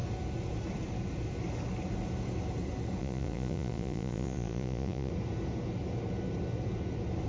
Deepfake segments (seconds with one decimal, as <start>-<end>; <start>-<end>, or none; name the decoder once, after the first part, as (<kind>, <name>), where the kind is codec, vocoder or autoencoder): 3.0-5.1 (vocoder, Vocos)